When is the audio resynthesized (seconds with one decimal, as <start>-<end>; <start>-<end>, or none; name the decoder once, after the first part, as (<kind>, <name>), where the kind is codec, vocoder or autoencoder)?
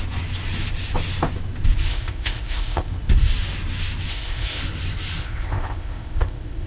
1.9-2.9 (codec, ZipCodec); 4.1-4.6; 5.2-6.7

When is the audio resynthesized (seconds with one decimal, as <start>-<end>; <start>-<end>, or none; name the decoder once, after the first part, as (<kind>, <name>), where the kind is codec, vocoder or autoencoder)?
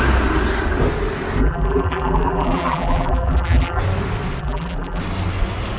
1.4-3.8 (vocoder, BigVGAN v2); 4.4-5.0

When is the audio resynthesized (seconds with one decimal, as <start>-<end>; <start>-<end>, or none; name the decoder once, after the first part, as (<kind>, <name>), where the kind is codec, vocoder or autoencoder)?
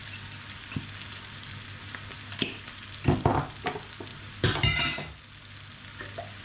none